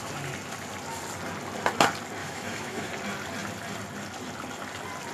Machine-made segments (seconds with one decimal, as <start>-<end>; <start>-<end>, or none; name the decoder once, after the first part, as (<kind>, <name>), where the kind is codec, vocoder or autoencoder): 2.2-2.9 (autoencoder, DAC-VAE)